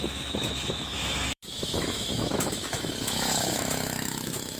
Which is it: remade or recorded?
remade